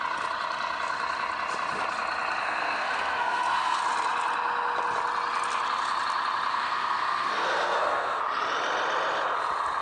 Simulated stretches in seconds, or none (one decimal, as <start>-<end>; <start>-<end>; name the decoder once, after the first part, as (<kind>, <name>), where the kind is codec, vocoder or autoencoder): 2.4-3.8 (codec, SNAC); 6.5-8.2